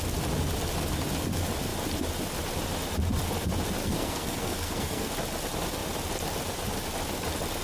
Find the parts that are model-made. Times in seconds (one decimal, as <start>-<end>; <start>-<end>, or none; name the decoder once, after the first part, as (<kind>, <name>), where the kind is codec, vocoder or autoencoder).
3.8-5.1 (codec, SNAC)